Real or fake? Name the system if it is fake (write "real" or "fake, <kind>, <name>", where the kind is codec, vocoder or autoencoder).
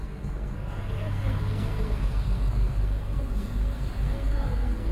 fake, codec, SNAC